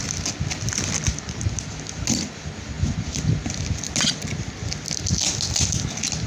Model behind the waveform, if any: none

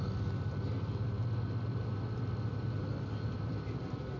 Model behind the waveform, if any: none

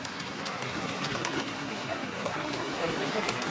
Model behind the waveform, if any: codec, SNAC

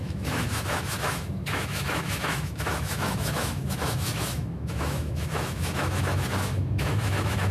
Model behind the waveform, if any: autoencoder, DAC-VAE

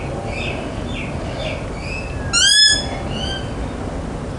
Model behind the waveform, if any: none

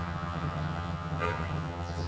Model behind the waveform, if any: vocoder, HiFi-GAN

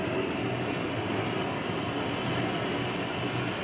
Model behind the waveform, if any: none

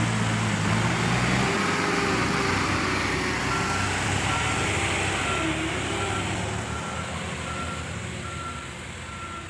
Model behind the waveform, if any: none